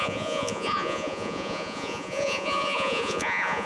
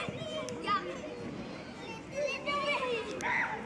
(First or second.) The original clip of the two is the second